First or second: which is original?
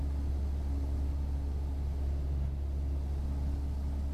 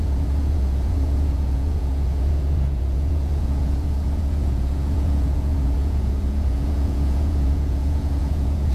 first